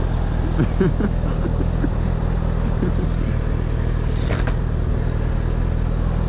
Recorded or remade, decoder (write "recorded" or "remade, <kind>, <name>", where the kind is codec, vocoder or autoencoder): recorded